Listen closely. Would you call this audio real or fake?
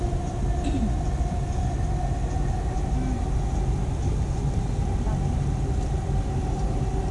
real